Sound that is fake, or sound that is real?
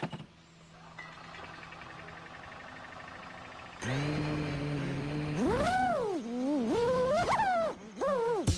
real